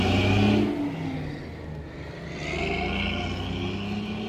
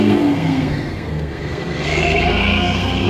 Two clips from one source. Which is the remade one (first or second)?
second